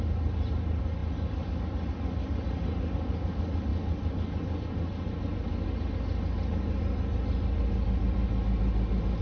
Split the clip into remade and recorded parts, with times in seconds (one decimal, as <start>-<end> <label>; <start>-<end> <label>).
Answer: 0.0-9.2 recorded